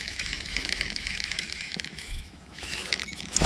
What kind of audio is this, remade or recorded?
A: remade